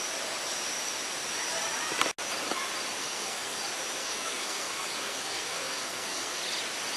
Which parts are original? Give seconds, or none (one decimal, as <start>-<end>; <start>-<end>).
0.0-3.0; 3.6-4.0; 6.4-7.0